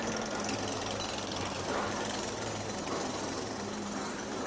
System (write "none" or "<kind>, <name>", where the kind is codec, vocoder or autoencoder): vocoder, BigVGAN v2